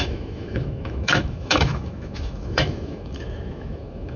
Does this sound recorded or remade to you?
remade